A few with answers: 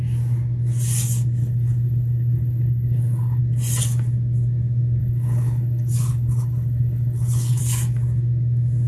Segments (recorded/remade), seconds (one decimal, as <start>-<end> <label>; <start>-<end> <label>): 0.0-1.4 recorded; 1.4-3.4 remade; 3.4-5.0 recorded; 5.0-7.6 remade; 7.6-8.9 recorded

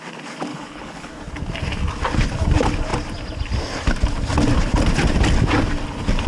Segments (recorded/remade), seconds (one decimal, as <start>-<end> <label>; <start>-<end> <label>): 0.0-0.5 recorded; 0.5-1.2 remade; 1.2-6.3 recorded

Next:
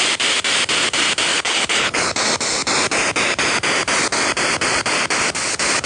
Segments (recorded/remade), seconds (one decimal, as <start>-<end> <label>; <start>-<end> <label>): 0.0-1.3 recorded; 1.3-2.1 remade; 2.1-5.9 recorded

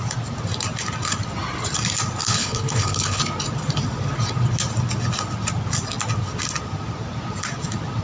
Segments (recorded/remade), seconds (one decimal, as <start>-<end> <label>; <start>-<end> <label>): 0.0-2.2 recorded; 2.2-3.2 remade; 3.2-8.0 recorded

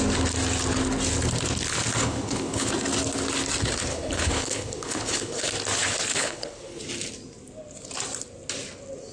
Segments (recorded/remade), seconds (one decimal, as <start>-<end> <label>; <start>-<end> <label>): 0.0-2.0 recorded; 2.0-2.7 remade; 2.7-3.9 recorded; 3.9-5.5 remade; 5.5-6.1 recorded; 6.1-6.8 remade; 6.8-9.1 recorded